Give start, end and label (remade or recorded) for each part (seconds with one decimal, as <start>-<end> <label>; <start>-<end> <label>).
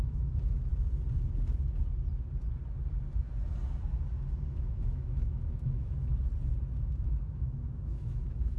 0.0-0.7 remade; 0.7-4.5 recorded; 4.5-6.1 remade; 6.1-6.8 recorded; 6.8-8.6 remade